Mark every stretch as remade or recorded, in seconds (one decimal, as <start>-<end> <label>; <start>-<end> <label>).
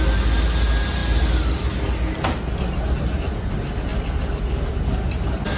0.0-5.6 recorded